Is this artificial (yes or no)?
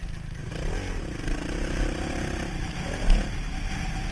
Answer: no